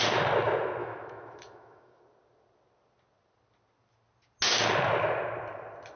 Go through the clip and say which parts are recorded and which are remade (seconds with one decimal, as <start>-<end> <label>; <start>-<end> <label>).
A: 0.0-0.8 recorded; 0.8-2.0 remade; 2.0-6.0 recorded